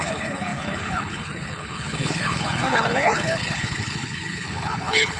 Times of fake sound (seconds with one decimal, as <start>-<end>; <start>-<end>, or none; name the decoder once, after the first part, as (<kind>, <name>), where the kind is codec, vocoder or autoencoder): 0.0-5.2 (codec, HILCodec)